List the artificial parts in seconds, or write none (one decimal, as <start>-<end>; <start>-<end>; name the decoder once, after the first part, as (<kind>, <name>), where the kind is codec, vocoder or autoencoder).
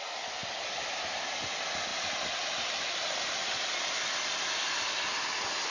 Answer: none